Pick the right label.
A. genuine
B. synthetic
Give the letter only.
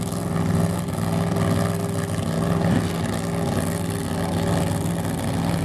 A